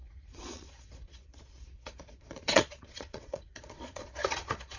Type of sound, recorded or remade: remade